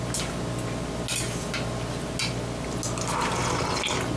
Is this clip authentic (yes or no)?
yes